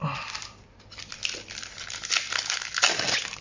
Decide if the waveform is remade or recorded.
recorded